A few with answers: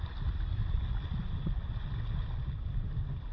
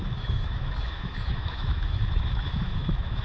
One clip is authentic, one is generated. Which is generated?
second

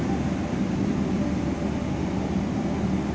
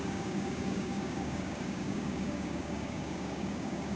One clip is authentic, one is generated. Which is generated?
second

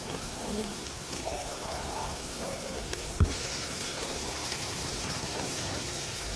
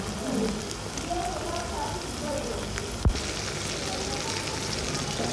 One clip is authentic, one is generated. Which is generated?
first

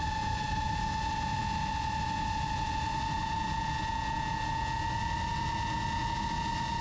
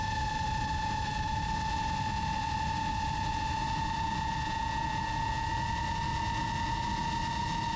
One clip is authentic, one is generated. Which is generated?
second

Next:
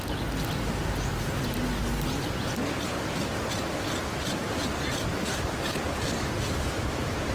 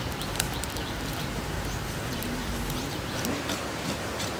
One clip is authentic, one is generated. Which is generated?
second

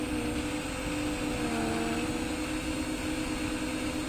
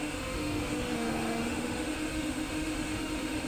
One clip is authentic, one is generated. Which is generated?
second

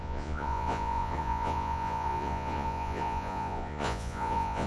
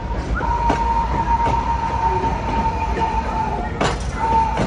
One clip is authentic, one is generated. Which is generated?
first